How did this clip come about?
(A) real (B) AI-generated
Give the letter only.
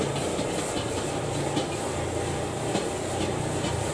A